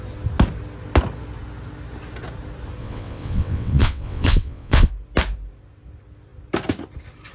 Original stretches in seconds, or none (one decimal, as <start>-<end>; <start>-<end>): 0.0-2.8; 4.9-7.3